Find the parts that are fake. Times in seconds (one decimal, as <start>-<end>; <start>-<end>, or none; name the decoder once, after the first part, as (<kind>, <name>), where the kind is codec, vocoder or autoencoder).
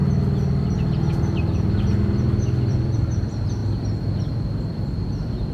2.7-3.6 (vocoder, BigVGAN v2); 4.2-5.5